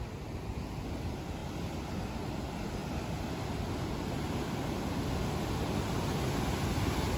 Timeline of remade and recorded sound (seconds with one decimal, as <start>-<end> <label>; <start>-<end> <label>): 0.0-7.2 recorded